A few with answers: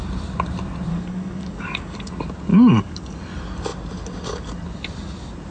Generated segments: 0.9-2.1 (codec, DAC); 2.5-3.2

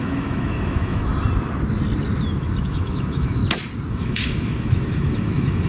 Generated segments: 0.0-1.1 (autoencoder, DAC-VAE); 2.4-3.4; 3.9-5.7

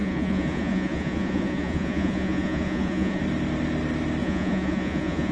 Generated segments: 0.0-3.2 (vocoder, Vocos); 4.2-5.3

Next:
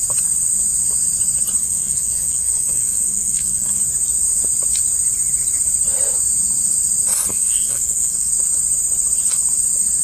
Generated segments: 1.6-3.8 (codec, SNAC); 7.3-8.3

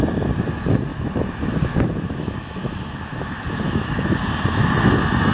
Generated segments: 0.9-4.1 (autoencoder, DAC-VAE)

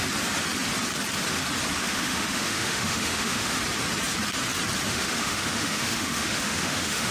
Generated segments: 1.8-3.6 (autoencoder, DAC-VAE); 4.9-7.1

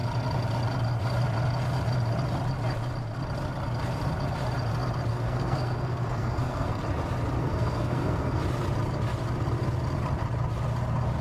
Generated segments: 5.1-6.8 (codec, SNAC); 7.4-8.4